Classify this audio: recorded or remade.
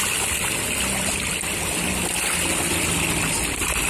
recorded